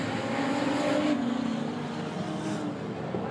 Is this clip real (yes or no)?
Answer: yes